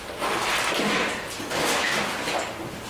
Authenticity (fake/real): real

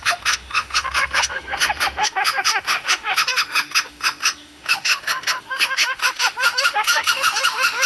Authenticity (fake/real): fake